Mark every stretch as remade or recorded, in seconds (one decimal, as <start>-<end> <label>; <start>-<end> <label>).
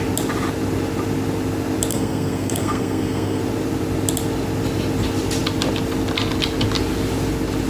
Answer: 0.0-1.9 recorded; 1.9-3.4 remade; 3.4-7.7 recorded